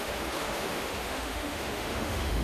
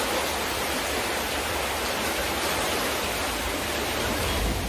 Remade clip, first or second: first